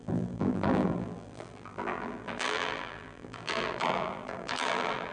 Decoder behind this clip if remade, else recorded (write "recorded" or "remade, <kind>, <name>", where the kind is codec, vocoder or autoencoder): remade, vocoder, BigVGAN v2